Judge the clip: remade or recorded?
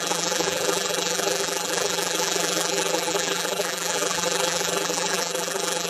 remade